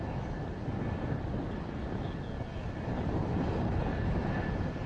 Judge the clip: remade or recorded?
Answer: recorded